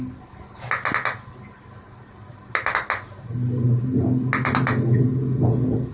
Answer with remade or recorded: recorded